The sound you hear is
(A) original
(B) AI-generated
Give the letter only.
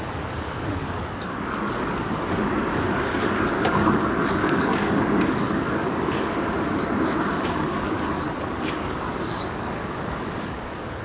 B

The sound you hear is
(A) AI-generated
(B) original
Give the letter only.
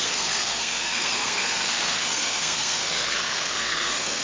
A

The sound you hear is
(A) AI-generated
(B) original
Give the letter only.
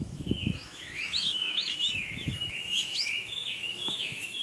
A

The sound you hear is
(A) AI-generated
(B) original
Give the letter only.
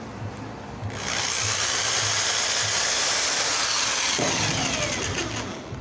B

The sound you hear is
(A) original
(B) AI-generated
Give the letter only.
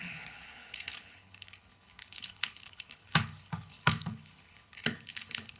B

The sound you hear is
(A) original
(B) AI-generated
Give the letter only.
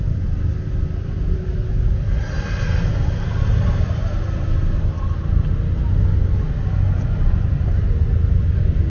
A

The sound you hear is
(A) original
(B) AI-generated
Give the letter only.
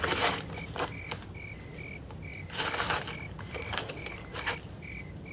A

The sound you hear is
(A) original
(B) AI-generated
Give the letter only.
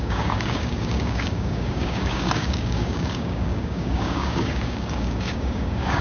B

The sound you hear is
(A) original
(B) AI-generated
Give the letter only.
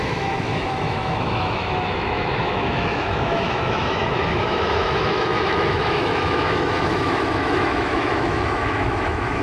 B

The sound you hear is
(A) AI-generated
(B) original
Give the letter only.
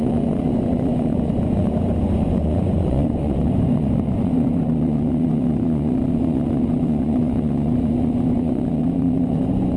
A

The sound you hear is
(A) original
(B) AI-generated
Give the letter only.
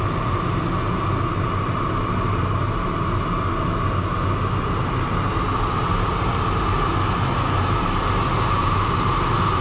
A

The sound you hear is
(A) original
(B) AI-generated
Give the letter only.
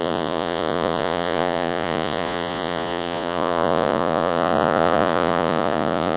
B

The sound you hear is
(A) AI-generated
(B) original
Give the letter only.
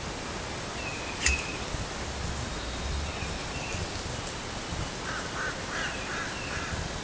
B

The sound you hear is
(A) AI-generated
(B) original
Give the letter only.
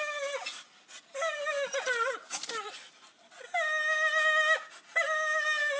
B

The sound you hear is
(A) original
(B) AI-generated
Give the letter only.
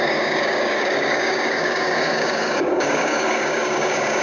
B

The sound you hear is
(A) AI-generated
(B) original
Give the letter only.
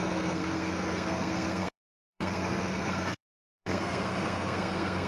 A